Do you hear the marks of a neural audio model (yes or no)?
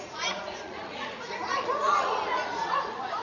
yes